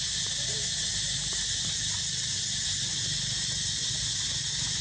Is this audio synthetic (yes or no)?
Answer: no